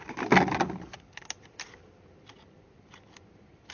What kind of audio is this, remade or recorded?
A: recorded